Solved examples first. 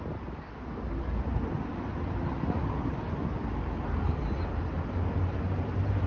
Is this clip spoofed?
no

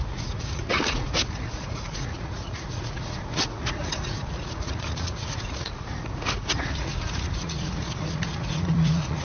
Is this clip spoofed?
yes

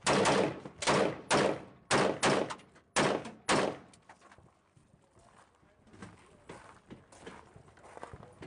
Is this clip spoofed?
no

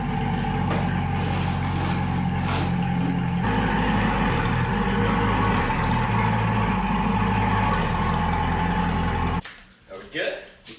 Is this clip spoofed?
no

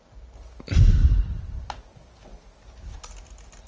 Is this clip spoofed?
no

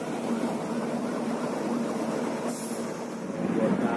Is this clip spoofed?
no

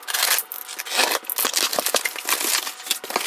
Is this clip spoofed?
no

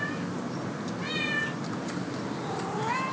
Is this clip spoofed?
no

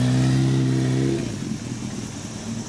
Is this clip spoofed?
no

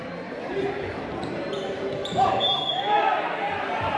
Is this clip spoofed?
yes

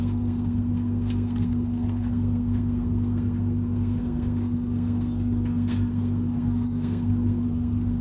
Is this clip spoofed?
yes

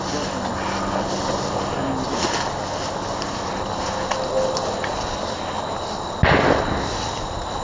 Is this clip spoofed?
no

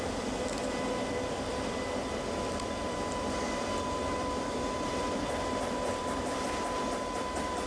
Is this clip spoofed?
yes